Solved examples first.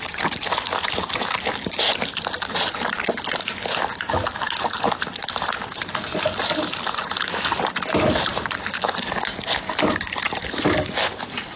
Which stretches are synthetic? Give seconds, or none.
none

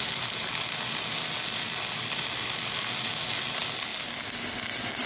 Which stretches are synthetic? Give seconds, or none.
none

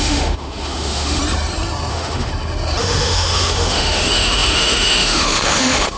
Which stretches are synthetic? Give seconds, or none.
0.0-1.2 (autoencoder, DAC-VAE); 1.9-2.3; 2.8-6.0

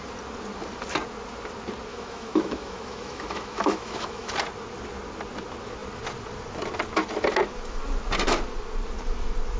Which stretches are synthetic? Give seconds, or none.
1.9-4.3 (autoencoder, DAC-VAE)

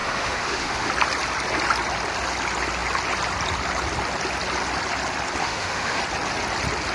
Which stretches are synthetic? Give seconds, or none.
0.0-0.9 (autoencoder, DAC-VAE); 5.4-6.0